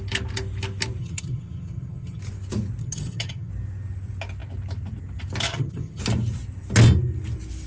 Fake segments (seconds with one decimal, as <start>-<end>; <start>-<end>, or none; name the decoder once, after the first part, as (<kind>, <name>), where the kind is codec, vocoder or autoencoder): 1.0-2.2 (vocoder, HiFi-GAN); 2.8-3.5; 5.5-6.0